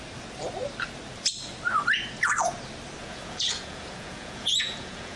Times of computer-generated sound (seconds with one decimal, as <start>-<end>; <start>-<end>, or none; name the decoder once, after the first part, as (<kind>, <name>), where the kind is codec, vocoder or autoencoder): 3.0-5.2 (vocoder, Vocos)